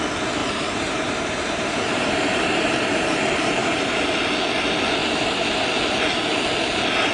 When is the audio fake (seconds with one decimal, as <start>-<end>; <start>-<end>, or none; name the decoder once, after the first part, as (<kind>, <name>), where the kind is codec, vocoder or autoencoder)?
0.4-3.2 (vocoder, BigVGAN v2); 3.6-4.1; 5.0-5.6